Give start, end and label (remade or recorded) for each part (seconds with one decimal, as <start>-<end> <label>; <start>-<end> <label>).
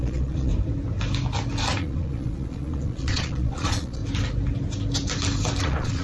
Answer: 0.0-0.5 remade; 0.5-1.8 recorded; 1.8-4.0 remade; 4.0-5.6 recorded; 5.6-6.0 remade